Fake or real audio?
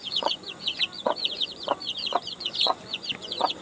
fake